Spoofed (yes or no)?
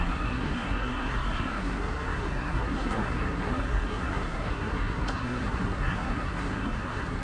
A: yes